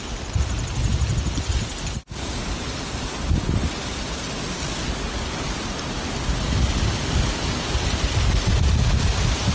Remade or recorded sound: recorded